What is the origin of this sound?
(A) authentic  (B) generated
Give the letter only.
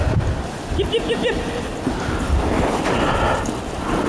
A